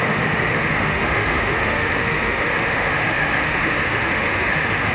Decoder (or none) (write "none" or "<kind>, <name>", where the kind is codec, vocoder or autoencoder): autoencoder, DAC-VAE